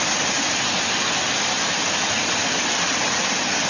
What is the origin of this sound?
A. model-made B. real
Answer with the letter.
B